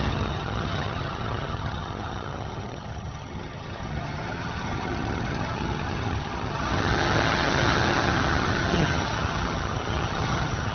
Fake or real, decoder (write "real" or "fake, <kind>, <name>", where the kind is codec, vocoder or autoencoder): fake, vocoder, HiFi-GAN